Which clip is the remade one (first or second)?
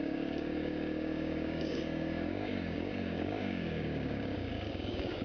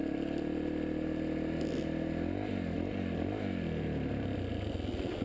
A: first